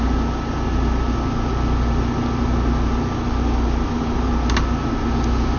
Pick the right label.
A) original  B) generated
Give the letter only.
B